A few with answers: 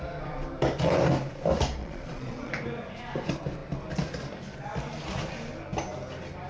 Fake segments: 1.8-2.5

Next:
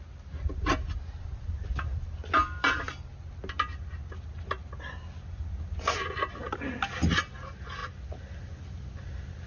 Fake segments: none